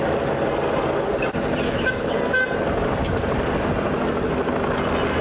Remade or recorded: recorded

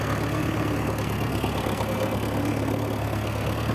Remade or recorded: remade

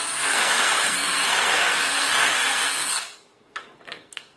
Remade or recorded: remade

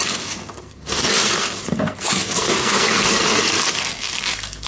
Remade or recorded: remade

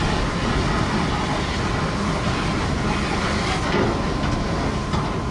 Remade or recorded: recorded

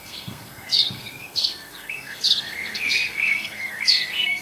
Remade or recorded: remade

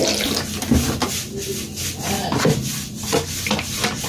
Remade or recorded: recorded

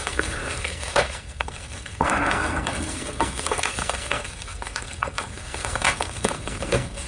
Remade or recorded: remade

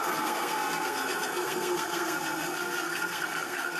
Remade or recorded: remade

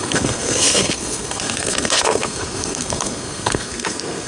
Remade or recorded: remade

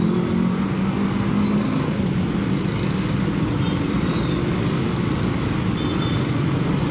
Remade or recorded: recorded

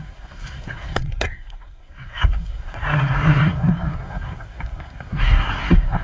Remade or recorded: remade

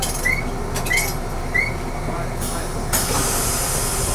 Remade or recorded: recorded